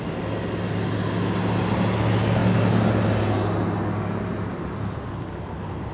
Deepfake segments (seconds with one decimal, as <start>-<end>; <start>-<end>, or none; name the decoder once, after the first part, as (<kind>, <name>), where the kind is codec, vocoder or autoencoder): none